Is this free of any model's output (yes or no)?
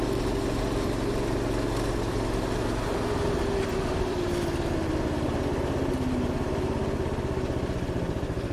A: yes